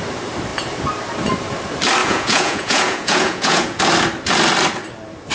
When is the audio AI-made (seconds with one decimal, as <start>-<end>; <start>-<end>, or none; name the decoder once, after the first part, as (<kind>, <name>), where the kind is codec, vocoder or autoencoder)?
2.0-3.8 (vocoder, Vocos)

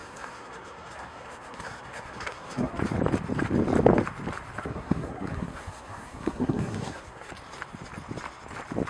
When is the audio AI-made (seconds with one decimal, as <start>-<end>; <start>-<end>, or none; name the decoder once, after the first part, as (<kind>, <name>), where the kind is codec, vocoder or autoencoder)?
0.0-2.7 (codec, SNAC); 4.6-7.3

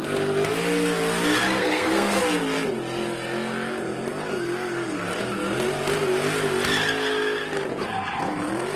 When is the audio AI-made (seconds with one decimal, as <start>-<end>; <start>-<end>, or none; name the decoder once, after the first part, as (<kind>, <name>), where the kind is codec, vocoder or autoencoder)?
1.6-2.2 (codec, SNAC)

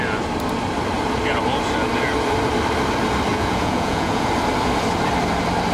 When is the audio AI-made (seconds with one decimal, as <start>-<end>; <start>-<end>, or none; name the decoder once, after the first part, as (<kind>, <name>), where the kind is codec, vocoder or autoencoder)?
3.3-4.3 (vocoder, Vocos)